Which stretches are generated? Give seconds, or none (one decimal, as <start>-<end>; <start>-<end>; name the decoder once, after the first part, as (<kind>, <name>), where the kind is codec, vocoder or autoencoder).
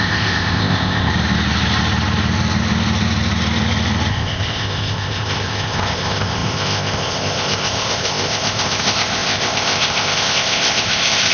0.0-1.1 (codec, ZipCodec); 4.1-11.3